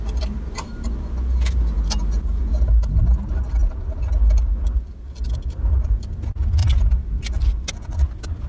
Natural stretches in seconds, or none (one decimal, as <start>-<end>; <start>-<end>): 0.0-6.6; 7.7-8.5